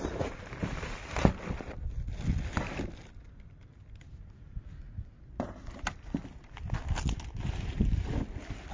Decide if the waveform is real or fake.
real